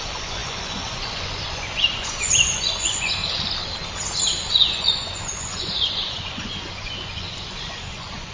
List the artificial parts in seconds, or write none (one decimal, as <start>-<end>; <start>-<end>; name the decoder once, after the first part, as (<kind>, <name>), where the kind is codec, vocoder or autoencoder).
0.0-3.2 (vocoder, Vocos); 4.5-8.3